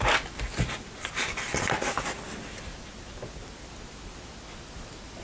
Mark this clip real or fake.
real